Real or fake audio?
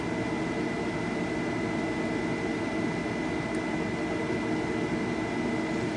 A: real